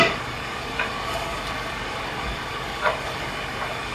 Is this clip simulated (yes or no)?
yes